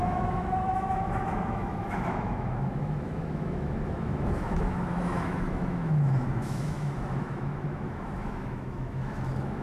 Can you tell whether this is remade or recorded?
remade